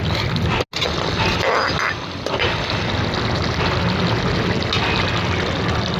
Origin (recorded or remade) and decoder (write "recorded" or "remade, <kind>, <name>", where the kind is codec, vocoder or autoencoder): recorded